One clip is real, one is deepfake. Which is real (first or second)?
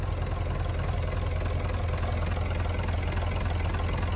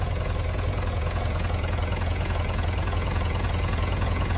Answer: first